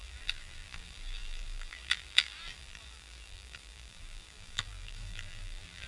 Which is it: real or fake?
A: fake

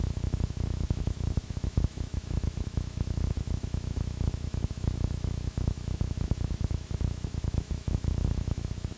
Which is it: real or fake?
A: fake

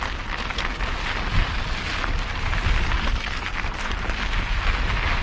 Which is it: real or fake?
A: real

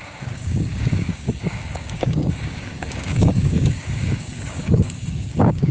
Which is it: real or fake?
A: fake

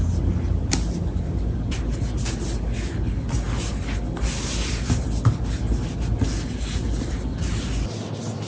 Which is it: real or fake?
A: real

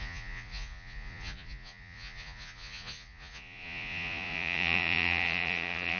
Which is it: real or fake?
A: fake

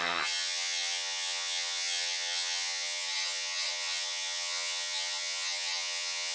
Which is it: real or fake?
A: fake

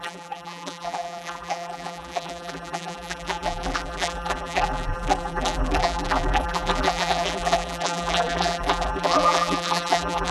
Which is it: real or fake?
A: fake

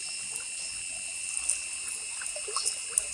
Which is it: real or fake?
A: real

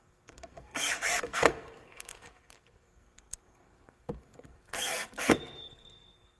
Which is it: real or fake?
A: fake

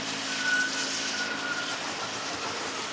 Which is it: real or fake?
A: real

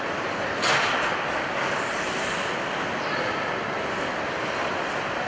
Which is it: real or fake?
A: real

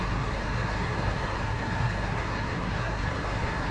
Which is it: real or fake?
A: fake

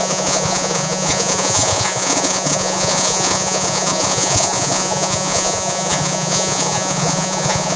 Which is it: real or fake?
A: fake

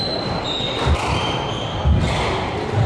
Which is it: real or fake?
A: real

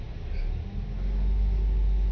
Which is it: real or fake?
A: real